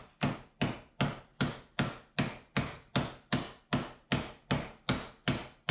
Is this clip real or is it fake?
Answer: real